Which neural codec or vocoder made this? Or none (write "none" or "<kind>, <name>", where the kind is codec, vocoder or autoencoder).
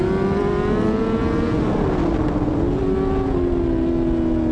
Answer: none